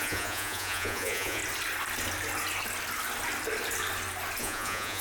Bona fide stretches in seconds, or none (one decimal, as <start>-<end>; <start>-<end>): 1.4-4.4